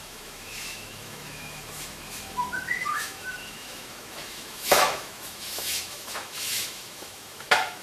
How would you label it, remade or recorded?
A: remade